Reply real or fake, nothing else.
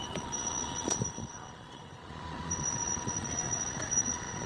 fake